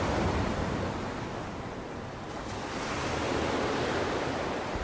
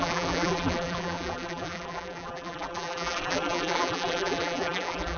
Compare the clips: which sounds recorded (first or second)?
first